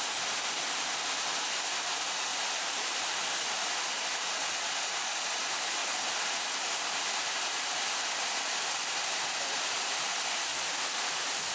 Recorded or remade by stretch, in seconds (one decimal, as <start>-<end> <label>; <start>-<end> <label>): 0.0-11.5 recorded